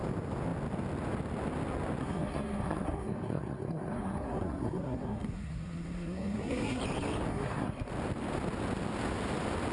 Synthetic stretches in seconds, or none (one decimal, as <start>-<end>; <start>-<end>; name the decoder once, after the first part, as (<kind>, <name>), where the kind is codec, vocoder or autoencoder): 2.0-6.8 (codec, SNAC); 7.3-7.9